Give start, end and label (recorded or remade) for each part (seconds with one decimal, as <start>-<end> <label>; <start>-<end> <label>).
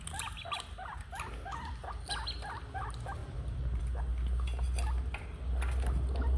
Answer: 0.0-6.4 recorded